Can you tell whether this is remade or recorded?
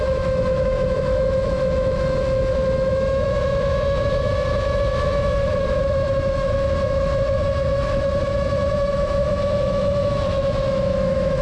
remade